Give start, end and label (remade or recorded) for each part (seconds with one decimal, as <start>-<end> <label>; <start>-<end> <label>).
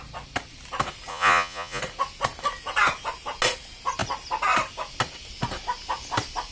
0.0-1.1 recorded; 1.1-1.8 remade; 1.8-6.5 recorded